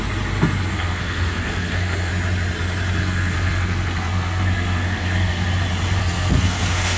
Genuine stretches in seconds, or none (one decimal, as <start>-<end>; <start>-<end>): 0.0-0.7; 2.1-3.0; 5.5-6.0